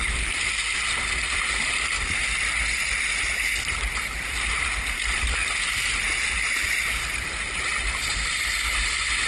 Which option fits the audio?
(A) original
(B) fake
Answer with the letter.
A